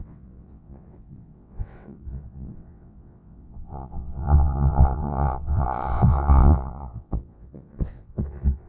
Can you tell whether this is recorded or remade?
remade